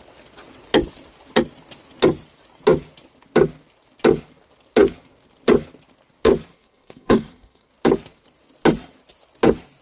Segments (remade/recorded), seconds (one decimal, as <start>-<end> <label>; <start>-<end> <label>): 0.0-6.5 recorded; 6.5-7.7 remade; 7.7-9.8 recorded